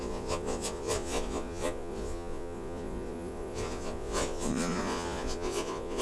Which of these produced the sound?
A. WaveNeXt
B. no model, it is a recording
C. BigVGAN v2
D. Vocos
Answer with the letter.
D